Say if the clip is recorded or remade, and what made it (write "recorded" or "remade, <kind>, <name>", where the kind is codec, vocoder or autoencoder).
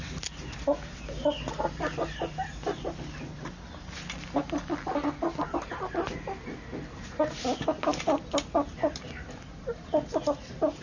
recorded